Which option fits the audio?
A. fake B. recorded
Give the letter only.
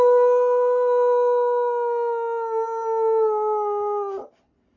B